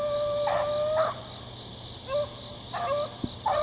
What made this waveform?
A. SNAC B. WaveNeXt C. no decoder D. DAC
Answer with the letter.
C